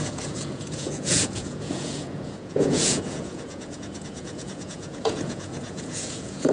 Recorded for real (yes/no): no